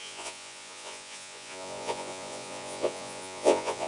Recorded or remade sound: remade